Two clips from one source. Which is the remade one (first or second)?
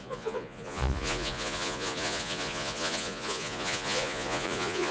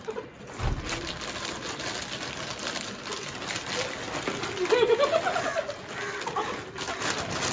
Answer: first